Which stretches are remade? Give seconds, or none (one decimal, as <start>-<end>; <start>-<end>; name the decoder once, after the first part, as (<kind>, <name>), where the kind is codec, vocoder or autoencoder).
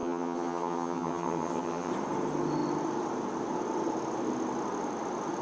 0.0-1.9 (vocoder, HiFi-GAN)